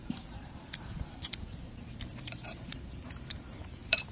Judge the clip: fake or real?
fake